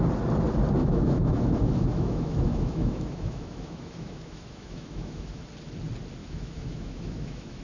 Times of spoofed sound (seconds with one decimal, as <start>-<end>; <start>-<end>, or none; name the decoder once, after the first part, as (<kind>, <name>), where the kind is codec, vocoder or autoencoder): 0.8-5.4 (autoencoder, DAC-VAE); 6.2-7.6